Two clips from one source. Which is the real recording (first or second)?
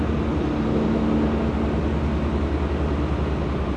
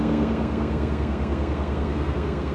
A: first